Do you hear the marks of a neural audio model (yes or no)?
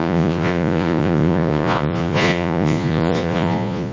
yes